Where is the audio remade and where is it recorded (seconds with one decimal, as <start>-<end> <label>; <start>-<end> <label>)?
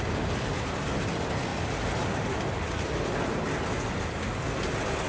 0.0-5.1 recorded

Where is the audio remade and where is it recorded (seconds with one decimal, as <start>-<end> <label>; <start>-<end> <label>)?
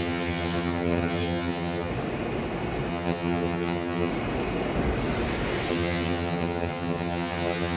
0.0-1.9 remade; 1.9-2.9 recorded; 2.9-4.1 remade; 4.1-5.7 recorded; 5.7-7.8 remade